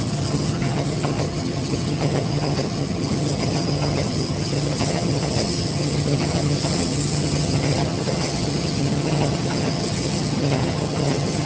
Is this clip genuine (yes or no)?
no